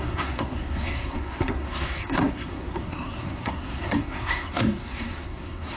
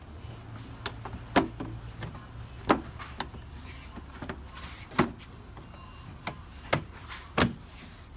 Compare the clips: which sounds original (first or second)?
second